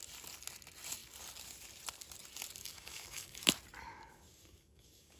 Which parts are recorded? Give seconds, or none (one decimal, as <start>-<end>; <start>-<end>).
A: 0.0-2.6; 3.5-3.9